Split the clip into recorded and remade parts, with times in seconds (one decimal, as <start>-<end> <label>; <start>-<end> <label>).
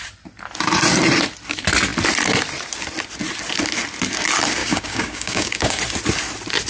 0.0-4.6 recorded; 4.6-5.8 remade; 5.8-6.7 recorded